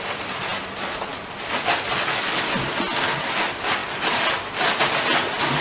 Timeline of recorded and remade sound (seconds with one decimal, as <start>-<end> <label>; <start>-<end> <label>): 0.0-5.6 recorded